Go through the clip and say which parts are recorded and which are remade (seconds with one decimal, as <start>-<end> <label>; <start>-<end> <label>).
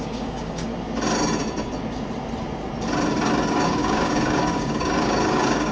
0.0-0.7 remade; 0.7-3.5 recorded; 3.5-5.7 remade